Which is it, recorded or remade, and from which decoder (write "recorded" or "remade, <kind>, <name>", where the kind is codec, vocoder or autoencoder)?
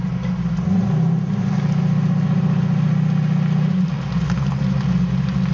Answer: recorded